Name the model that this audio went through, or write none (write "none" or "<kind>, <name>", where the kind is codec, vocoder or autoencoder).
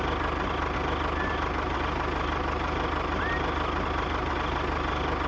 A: none